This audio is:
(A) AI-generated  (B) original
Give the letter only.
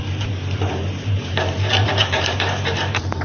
A